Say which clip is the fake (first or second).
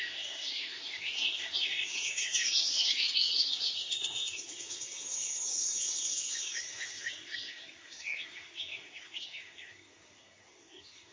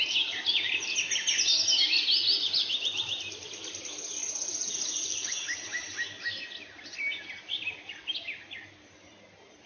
first